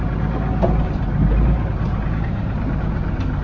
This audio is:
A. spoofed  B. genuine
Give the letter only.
B